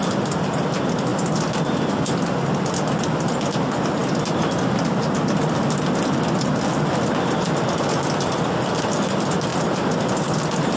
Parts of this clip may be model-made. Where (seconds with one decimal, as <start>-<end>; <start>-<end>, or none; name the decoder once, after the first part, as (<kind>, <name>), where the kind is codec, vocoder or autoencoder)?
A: none